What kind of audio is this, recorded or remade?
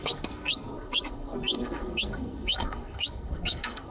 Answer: remade